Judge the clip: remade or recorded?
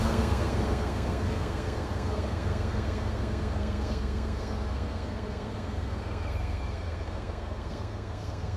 remade